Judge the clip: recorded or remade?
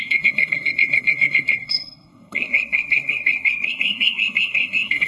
remade